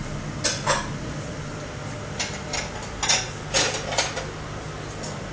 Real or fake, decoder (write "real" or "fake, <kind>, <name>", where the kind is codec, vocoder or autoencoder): real